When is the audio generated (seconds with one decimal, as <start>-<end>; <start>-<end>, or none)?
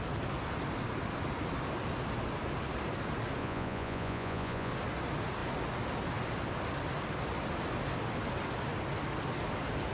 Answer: 3.4-4.7